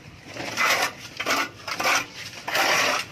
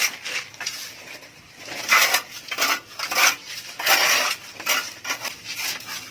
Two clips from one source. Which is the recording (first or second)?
second